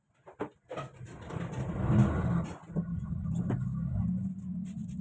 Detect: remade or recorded recorded